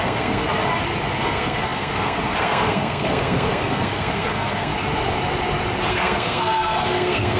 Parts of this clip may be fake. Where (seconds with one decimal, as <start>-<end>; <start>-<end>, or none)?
0.0-0.4; 1.2-4.7; 5.9-7.4